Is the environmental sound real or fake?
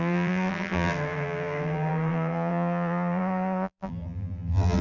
fake